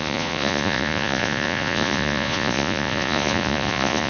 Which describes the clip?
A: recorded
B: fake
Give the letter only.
B